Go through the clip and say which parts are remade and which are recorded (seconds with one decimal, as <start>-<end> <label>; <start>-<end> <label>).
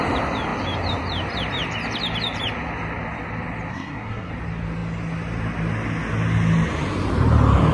0.0-3.7 recorded; 3.7-4.3 remade; 4.3-7.7 recorded